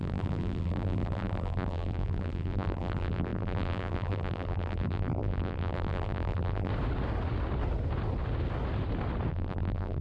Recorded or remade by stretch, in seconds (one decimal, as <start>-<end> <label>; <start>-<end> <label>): 0.0-6.7 remade; 6.7-9.3 recorded; 9.3-10.0 remade